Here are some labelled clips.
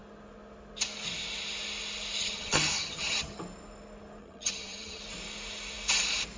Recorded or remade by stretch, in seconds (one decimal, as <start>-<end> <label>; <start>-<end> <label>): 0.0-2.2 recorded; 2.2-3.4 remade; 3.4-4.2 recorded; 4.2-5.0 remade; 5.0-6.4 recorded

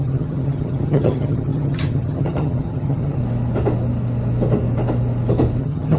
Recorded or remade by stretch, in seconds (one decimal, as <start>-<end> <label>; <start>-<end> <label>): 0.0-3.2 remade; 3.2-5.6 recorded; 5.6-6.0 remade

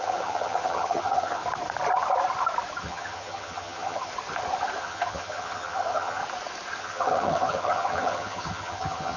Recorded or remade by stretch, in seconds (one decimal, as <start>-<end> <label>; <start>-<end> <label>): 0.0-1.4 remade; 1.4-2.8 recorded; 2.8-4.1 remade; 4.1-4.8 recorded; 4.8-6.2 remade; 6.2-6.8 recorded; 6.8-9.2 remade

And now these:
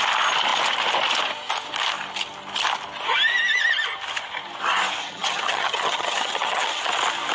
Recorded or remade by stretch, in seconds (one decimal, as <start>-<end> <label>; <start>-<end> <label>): 0.0-5.0 recorded; 5.0-6.8 remade; 6.8-7.3 recorded

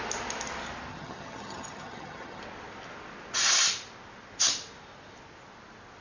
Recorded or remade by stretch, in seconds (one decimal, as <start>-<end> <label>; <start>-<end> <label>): 0.0-0.9 recorded; 0.9-2.4 remade; 2.4-6.0 recorded

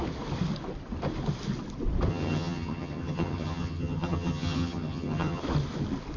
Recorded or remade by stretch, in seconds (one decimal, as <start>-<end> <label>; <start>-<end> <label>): 0.0-2.1 recorded; 2.1-5.4 remade; 5.4-6.2 recorded